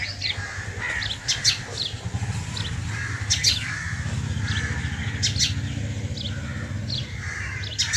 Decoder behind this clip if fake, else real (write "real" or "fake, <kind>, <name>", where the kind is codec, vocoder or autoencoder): real